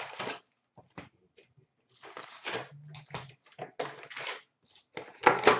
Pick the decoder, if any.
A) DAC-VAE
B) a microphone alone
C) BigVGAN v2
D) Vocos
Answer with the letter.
B